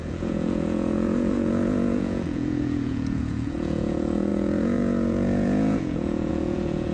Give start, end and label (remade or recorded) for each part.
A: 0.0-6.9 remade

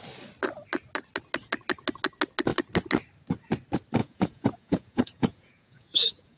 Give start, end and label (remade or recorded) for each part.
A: 0.0-4.0 recorded; 4.0-6.4 remade